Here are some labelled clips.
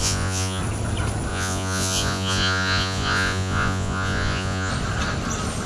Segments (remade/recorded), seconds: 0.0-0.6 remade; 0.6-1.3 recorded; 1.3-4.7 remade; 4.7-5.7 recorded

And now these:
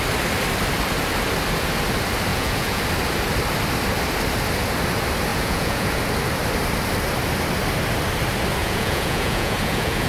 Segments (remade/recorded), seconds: 0.0-2.3 recorded; 2.3-2.8 remade; 2.8-5.3 recorded; 5.3-6.0 remade; 6.0-8.6 recorded; 8.6-10.1 remade

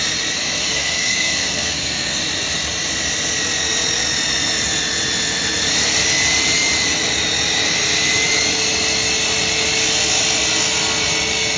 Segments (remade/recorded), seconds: 0.0-0.6 recorded; 0.6-2.2 remade; 2.2-11.6 recorded

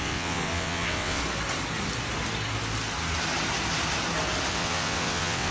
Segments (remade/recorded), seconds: 0.0-1.2 remade; 1.2-4.5 recorded; 4.5-5.5 remade

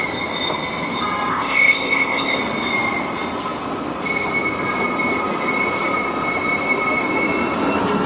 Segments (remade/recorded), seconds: 0.0-1.3 recorded; 1.3-2.4 remade; 2.4-8.1 recorded

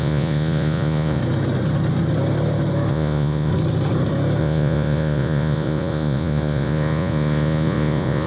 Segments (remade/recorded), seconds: 0.0-1.2 remade; 1.2-2.9 recorded; 2.9-3.5 remade; 3.5-4.4 recorded; 4.4-8.3 remade

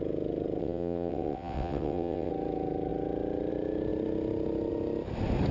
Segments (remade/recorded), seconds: 0.0-0.6 recorded; 0.6-2.3 remade; 2.3-5.5 recorded